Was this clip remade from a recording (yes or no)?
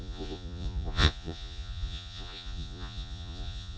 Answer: yes